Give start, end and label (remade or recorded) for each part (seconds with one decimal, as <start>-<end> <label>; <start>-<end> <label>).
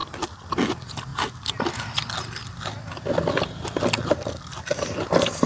0.0-5.5 recorded